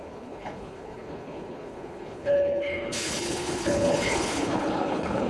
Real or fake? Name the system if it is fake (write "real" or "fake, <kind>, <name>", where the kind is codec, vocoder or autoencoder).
fake, codec, HILCodec